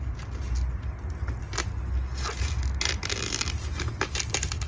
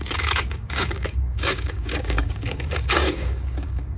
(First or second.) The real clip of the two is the first